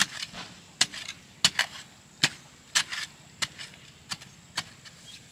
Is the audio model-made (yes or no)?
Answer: no